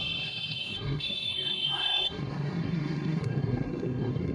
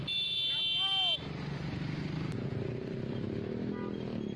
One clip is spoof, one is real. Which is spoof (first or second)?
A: first